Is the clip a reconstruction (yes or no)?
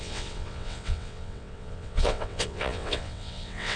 yes